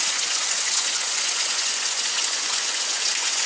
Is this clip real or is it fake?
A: fake